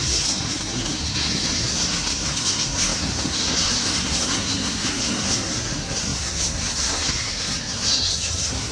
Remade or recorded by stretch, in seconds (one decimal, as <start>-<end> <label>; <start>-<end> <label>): 0.0-8.7 remade